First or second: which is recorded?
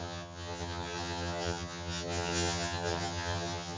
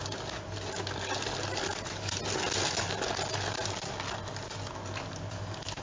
second